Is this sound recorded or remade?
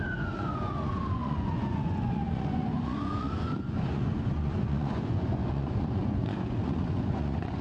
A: remade